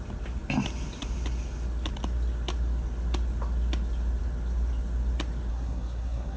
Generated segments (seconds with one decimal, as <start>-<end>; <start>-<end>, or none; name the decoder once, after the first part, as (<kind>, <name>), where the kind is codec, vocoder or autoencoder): 5.5-6.4 (codec, SNAC)